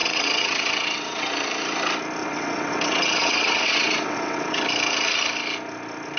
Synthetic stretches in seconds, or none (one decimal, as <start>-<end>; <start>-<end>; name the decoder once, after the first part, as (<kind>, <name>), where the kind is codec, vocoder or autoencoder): 0.0-1.3 (vocoder, WaveNeXt); 2.2-4.6